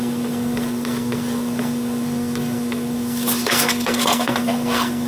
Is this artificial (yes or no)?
yes